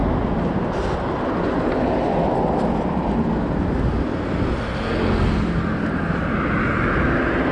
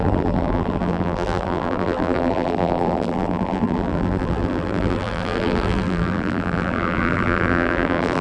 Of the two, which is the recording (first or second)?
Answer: first